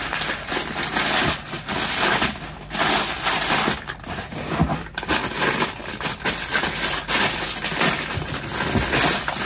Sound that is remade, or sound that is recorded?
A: recorded